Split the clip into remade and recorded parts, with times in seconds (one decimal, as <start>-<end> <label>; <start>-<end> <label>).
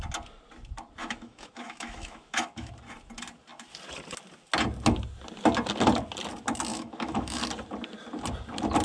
0.0-1.0 recorded; 1.0-2.7 remade; 2.7-6.7 recorded; 6.7-7.4 remade; 7.4-8.8 recorded